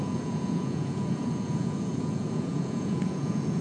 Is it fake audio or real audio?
fake